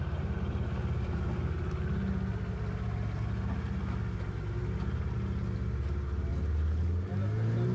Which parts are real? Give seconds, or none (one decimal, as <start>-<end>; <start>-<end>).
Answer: 0.0-7.7